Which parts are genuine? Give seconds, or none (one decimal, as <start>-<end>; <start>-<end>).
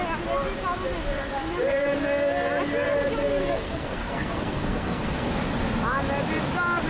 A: 0.0-3.4; 5.3-6.9